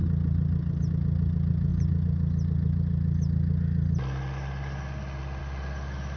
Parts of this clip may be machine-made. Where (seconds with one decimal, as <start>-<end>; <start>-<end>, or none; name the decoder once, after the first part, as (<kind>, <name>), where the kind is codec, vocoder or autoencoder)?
none